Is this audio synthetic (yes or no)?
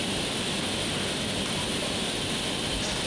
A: no